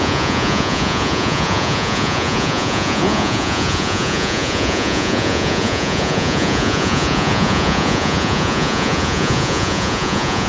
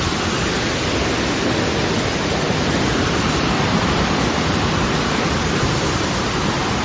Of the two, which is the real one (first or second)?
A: second